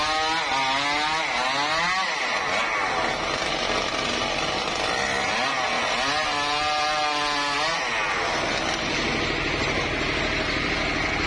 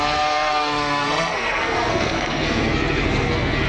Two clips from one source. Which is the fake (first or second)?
second